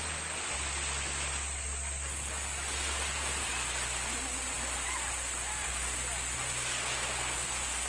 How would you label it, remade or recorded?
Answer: recorded